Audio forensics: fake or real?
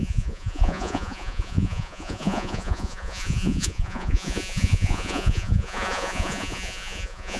fake